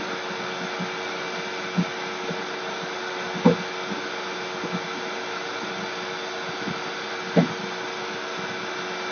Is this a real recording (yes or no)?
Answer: yes